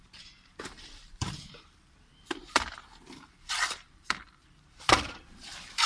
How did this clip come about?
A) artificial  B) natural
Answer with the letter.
A